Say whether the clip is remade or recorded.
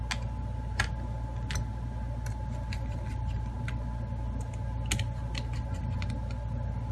recorded